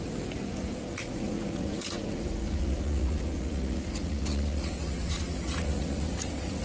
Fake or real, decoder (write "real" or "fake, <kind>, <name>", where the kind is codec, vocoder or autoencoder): fake, vocoder, Vocos